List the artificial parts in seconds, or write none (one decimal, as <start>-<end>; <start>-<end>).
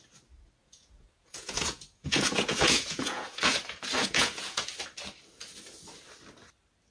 0.6-3.6; 4.0-4.6